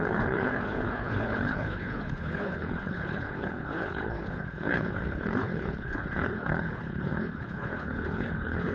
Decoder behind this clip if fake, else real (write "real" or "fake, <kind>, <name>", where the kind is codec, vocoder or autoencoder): fake, codec, HILCodec